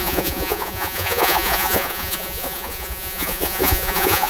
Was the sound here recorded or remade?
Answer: remade